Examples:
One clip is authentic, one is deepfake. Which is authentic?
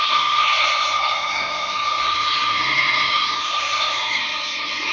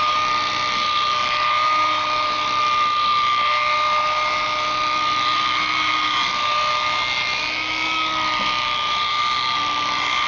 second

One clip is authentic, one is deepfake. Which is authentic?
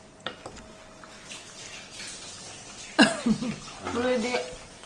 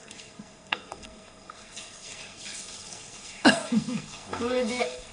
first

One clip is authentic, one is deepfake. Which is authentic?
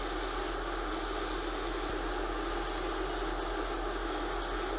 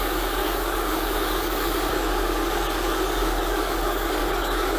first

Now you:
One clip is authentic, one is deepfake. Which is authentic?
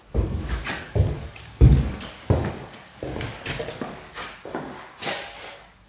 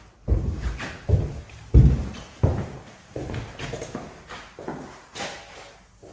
second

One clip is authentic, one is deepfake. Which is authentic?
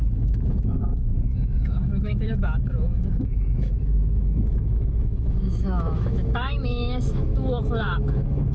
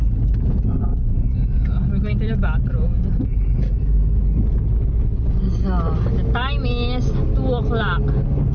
second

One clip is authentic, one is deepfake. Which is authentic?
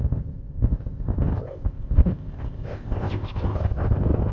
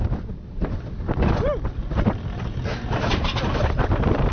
second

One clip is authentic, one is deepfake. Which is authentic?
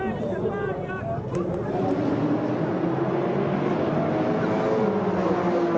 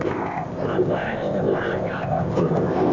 first